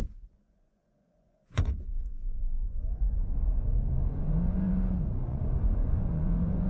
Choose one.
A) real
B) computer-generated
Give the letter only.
B